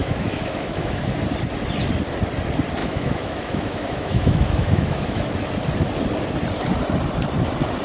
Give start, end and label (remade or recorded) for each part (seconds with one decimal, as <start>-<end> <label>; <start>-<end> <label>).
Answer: 0.0-1.2 remade; 1.2-2.8 recorded; 2.8-5.2 remade; 5.2-7.8 recorded